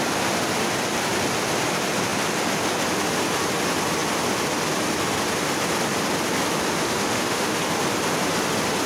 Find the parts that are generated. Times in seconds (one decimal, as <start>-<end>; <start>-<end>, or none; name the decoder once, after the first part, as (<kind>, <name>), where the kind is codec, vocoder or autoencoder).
6.8-7.6 (autoencoder, DAC-VAE)